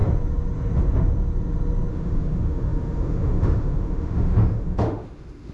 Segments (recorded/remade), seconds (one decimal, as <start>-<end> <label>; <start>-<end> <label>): 0.0-1.9 recorded; 1.9-5.5 remade